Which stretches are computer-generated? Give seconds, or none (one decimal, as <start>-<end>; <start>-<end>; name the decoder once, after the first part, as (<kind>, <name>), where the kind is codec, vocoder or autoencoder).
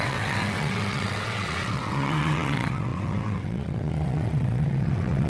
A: 0.0-5.3 (vocoder, WaveNeXt)